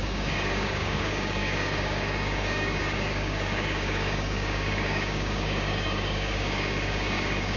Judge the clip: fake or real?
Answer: fake